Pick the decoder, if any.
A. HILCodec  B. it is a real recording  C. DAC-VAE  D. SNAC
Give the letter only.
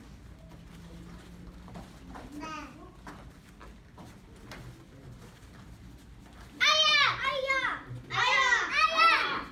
B